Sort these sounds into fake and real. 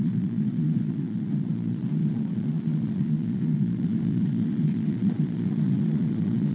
fake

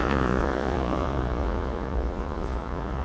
fake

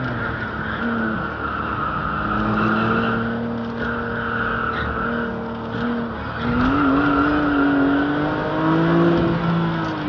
real